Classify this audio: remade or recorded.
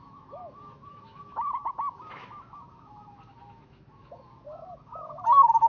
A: remade